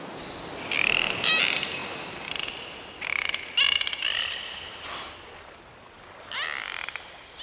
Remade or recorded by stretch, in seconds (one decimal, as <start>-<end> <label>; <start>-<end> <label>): 0.0-7.4 recorded